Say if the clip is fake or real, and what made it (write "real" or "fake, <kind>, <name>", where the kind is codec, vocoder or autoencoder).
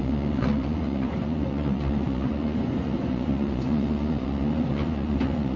fake, vocoder, Vocos